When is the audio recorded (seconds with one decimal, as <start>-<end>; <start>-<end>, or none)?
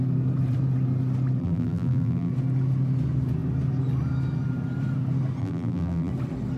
0.0-1.4; 2.3-5.4; 6.1-6.6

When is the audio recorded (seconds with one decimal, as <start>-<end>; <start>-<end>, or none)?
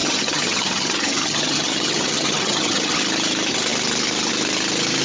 3.0-5.0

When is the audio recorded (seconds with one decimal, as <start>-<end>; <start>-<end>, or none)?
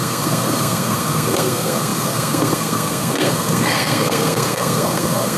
none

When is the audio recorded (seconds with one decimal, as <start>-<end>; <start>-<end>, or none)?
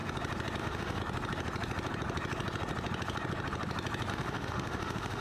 0.0-0.6; 1.0-4.1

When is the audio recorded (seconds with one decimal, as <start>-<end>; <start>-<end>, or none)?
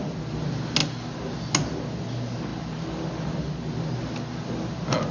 0.0-5.1